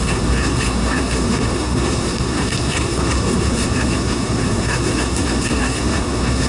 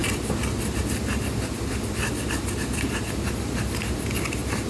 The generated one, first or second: first